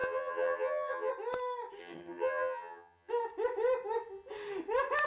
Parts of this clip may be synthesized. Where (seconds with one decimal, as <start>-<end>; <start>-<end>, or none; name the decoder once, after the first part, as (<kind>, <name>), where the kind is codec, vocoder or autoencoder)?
0.0-1.1 (vocoder, HiFi-GAN); 1.8-3.1